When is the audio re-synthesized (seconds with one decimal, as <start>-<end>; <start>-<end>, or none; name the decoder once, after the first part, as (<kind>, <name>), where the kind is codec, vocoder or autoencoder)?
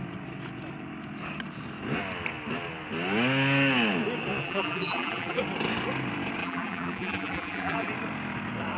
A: 4.4-5.4 (vocoder, BigVGAN v2); 6.4-7.9